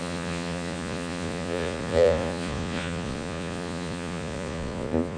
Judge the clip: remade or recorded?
remade